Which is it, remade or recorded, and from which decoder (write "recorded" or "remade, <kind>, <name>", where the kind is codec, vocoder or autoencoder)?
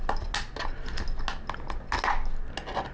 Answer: recorded